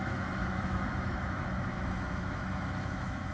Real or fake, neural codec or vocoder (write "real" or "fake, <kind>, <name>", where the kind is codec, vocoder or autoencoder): fake, autoencoder, DAC-VAE